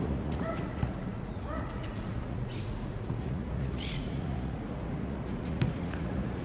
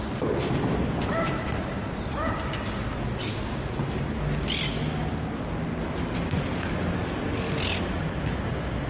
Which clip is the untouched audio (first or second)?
second